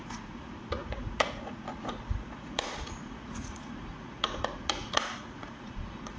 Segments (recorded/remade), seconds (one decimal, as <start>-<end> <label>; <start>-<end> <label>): 0.0-6.2 remade